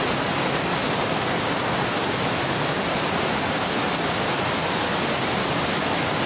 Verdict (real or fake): real